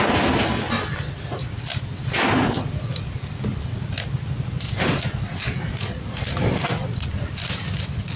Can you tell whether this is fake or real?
real